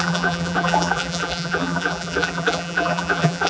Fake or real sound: fake